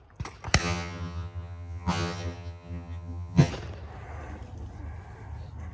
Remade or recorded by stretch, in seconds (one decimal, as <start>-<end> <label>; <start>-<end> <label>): 0.0-0.6 recorded; 0.6-3.5 remade; 3.5-5.7 recorded

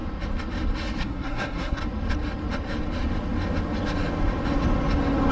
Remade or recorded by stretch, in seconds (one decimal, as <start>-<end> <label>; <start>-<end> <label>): 0.0-1.0 recorded; 1.0-1.8 remade; 1.8-5.3 recorded

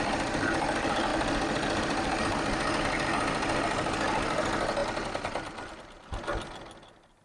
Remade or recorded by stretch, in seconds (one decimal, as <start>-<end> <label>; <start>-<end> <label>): 0.0-7.2 recorded

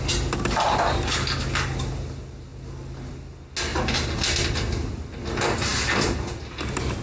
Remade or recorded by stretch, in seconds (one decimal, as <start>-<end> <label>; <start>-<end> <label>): 0.0-7.0 recorded

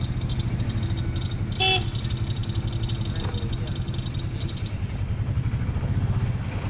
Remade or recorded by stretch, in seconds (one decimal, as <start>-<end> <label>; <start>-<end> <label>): 0.0-6.7 recorded

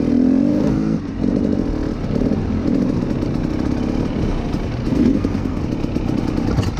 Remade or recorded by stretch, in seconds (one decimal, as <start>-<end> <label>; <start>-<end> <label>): 0.0-0.5 recorded; 0.5-1.0 remade; 1.0-4.8 recorded; 4.8-5.6 remade; 5.6-6.8 recorded

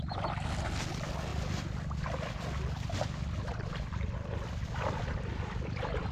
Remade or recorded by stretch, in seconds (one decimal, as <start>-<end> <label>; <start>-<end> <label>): 0.0-6.1 recorded